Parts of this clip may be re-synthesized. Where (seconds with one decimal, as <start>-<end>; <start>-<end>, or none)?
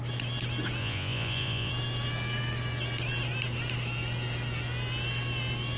0.8-1.7